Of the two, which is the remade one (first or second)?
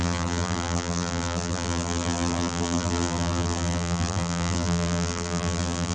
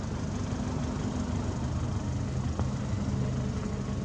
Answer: first